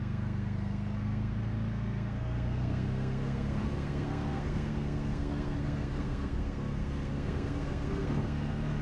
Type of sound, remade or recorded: remade